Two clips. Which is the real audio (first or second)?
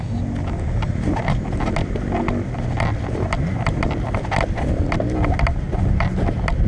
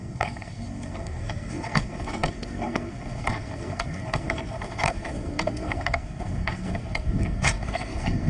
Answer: first